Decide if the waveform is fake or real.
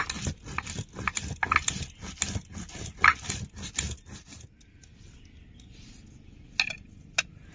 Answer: real